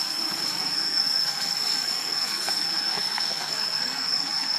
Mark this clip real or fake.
fake